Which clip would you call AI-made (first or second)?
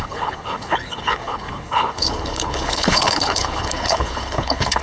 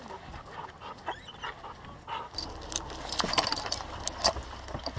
first